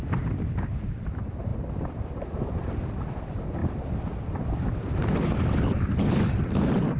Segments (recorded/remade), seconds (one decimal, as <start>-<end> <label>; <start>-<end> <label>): 0.0-1.5 recorded; 1.5-3.1 remade; 3.1-3.6 recorded; 3.6-5.6 remade; 5.6-7.0 recorded